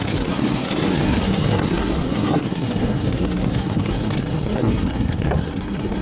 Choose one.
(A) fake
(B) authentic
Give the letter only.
A